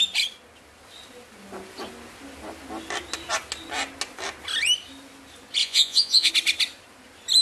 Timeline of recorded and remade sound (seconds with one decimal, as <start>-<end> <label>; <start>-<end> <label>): 0.0-5.6 recorded; 5.6-6.3 remade; 6.3-7.4 recorded